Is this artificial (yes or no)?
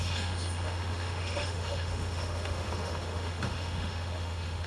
yes